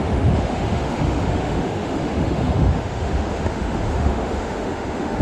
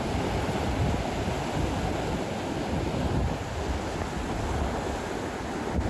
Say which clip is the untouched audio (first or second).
second